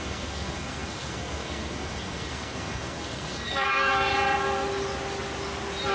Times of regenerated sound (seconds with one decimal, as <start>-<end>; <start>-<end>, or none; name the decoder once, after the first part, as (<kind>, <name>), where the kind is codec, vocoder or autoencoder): 0.0-4.1 (codec, SNAC)